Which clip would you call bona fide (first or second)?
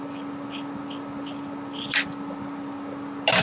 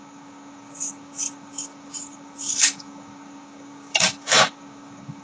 first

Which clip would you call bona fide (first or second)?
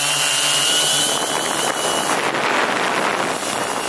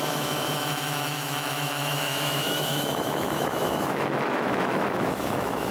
first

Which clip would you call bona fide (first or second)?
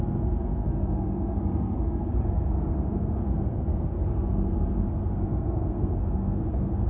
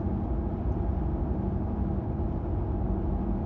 second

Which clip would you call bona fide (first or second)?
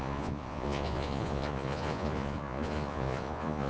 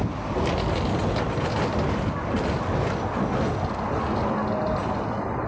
second